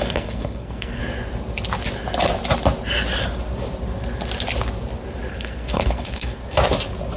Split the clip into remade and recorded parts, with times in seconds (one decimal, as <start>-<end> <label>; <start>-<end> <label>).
0.0-1.0 remade; 1.0-5.3 recorded; 5.3-6.4 remade; 6.4-7.2 recorded